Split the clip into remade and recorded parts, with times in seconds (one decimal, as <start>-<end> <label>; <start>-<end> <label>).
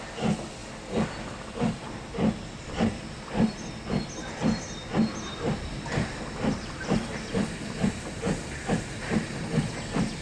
0.0-10.2 recorded